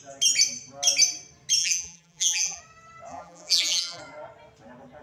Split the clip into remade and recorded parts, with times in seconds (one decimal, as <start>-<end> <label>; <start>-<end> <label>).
0.0-1.6 recorded; 1.6-2.6 remade; 2.6-3.1 recorded; 3.1-4.0 remade; 4.0-5.0 recorded